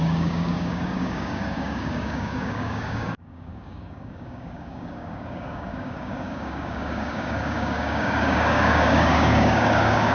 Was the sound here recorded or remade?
remade